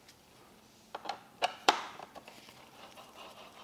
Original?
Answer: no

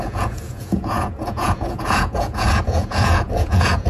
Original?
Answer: no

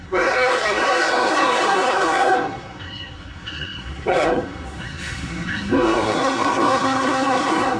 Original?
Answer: no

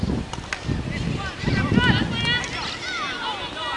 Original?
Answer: yes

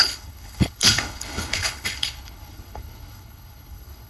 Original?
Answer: no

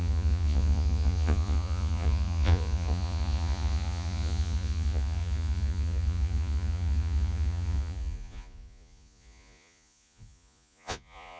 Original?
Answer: no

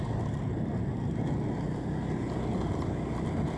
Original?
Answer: yes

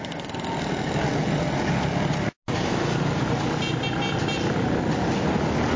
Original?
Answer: yes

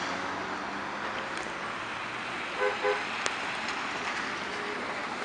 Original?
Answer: yes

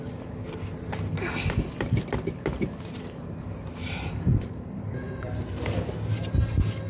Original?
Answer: yes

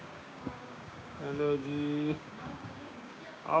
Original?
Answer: no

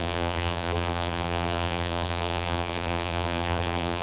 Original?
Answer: no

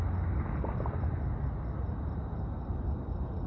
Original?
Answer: yes